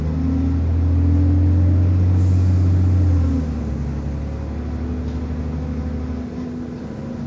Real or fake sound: real